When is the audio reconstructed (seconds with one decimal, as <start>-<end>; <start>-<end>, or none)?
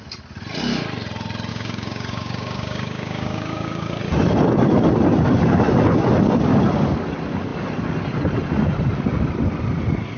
1.5-4.0